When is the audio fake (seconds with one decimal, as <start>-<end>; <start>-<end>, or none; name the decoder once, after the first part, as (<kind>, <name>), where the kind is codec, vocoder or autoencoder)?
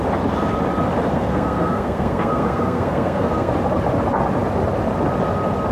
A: 1.1-3.5 (codec, SNAC)